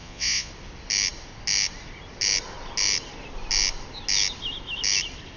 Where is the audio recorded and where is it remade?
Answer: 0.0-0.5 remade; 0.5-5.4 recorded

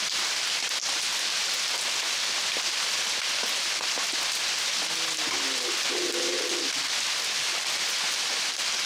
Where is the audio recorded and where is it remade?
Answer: 0.0-8.9 recorded

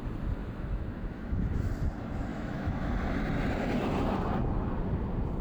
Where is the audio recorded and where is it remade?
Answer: 0.0-0.4 recorded; 0.4-1.7 remade; 1.7-2.3 recorded; 2.3-2.9 remade; 2.9-5.4 recorded

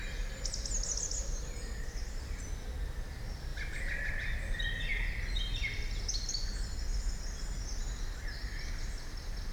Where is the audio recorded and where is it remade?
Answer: 0.0-3.5 recorded; 3.5-4.1 remade; 4.1-9.5 recorded

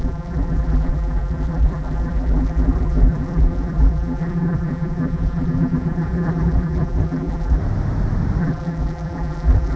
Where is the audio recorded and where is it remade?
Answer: 0.0-7.6 remade; 7.6-8.4 recorded; 8.4-9.8 remade

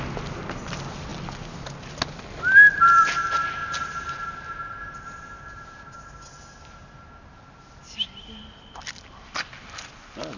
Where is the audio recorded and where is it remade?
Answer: 0.0-10.4 recorded